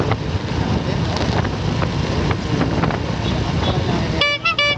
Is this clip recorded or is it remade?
recorded